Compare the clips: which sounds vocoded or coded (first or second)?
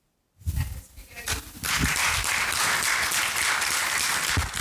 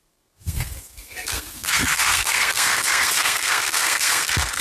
second